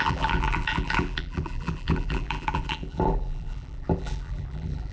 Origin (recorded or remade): remade